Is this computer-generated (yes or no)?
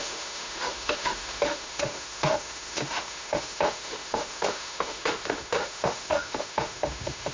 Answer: yes